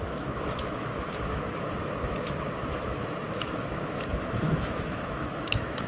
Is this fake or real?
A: fake